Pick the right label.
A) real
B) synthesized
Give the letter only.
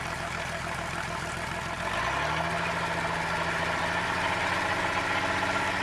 A